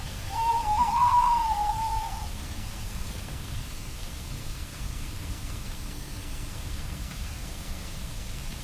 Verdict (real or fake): fake